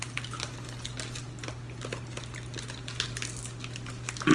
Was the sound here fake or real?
real